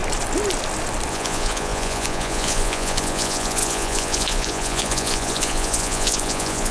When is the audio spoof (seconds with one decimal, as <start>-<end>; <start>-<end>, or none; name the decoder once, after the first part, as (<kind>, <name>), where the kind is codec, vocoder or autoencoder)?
1.1-6.7 (vocoder, Vocos)